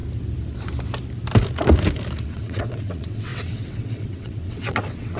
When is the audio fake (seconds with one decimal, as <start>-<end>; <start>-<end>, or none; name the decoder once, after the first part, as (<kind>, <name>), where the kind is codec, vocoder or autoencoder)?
2.2-5.2 (vocoder, WaveNeXt)